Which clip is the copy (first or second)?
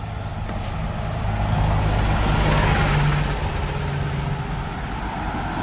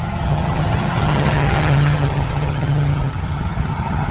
second